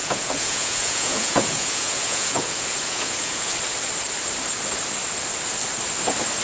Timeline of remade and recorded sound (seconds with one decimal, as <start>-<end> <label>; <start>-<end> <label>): 0.0-3.6 remade; 3.6-6.4 recorded